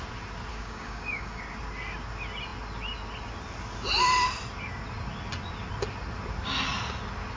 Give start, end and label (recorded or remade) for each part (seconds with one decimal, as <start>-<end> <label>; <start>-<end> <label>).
0.0-0.5 recorded; 0.5-1.4 remade; 1.4-7.4 recorded